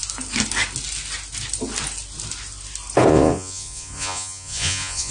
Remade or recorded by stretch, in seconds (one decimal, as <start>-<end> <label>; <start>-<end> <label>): 0.0-3.1 recorded; 3.1-5.1 remade